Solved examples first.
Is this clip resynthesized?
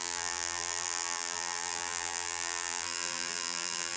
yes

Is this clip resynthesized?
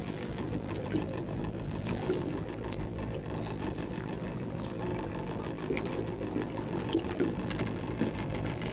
yes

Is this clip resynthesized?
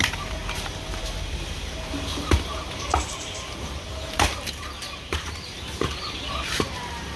yes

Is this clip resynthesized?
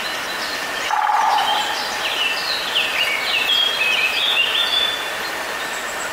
no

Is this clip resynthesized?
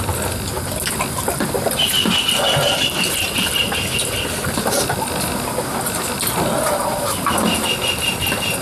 no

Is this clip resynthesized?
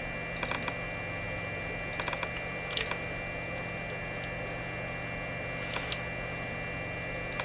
no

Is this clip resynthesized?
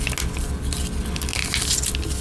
no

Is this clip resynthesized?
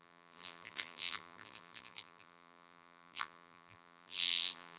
yes